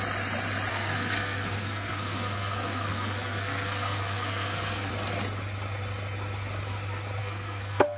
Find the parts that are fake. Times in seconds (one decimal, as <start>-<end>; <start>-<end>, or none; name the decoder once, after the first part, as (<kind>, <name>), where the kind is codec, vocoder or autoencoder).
0.7-4.9 (codec, SNAC); 7.2-8.0